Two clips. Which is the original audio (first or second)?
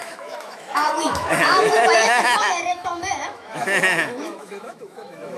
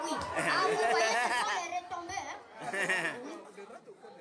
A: second